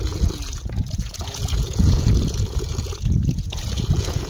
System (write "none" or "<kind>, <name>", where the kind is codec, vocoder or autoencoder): vocoder, Vocos